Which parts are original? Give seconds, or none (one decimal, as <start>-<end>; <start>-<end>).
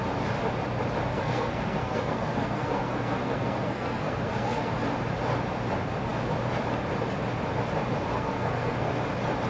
0.0-1.1; 4.7-8.1; 9.0-9.5